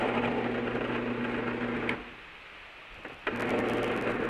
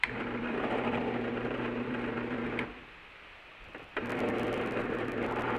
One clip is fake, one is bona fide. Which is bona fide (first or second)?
first